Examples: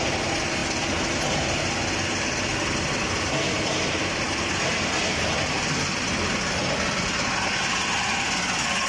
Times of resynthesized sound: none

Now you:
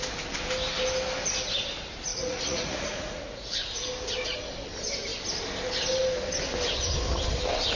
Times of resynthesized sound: 2.1-3.7 (vocoder, Vocos)